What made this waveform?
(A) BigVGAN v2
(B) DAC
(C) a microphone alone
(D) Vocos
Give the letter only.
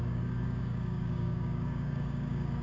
B